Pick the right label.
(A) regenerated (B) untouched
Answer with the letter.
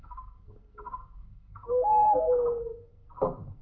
A